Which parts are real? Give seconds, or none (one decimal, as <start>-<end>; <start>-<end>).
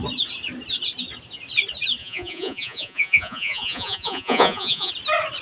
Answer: 0.0-2.0; 4.9-5.4